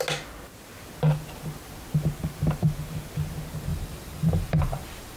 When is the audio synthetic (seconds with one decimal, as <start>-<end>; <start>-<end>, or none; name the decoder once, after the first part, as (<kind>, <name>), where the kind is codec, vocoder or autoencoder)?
3.7-5.2 (vocoder, BigVGAN v2)